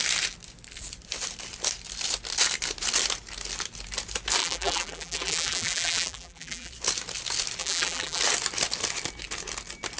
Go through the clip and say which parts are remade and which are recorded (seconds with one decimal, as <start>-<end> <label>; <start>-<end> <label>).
0.0-4.4 recorded; 4.4-6.7 remade; 6.7-7.6 recorded; 7.6-8.2 remade; 8.2-10.0 recorded